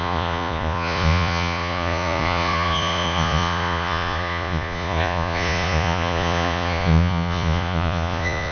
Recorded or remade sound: remade